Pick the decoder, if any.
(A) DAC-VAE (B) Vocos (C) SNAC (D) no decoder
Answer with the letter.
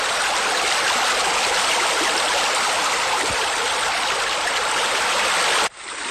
D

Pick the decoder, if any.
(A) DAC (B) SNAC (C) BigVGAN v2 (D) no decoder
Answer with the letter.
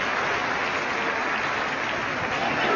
D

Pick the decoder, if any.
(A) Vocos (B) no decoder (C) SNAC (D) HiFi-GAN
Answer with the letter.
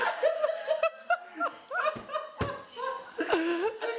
B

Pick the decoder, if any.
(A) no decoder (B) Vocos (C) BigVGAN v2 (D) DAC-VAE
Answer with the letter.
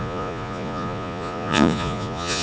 B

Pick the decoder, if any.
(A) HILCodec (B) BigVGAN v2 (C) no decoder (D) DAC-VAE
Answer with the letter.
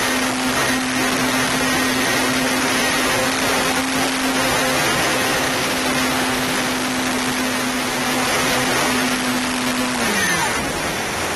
C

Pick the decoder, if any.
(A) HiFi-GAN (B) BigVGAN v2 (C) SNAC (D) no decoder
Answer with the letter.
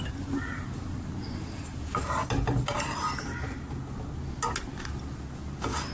D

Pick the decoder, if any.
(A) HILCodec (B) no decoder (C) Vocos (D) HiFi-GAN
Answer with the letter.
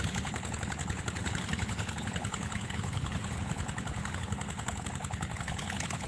A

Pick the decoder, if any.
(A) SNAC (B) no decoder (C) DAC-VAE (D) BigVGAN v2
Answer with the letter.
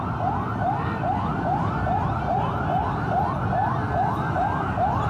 B